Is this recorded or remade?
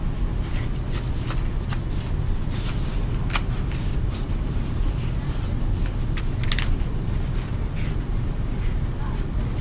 recorded